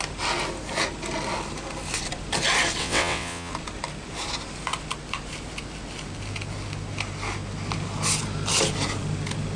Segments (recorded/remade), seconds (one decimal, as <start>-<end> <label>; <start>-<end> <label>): 0.0-2.8 recorded; 2.8-3.5 remade; 3.5-9.6 recorded